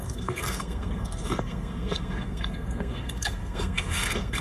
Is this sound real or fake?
fake